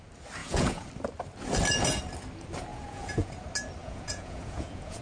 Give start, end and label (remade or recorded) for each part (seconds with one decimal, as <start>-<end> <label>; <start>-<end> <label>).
0.0-0.4 recorded; 0.4-0.9 remade; 0.9-2.7 recorded; 2.7-3.3 remade; 3.3-3.8 recorded; 3.8-5.0 remade